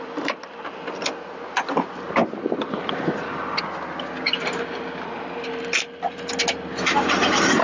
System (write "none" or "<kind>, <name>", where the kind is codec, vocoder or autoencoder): none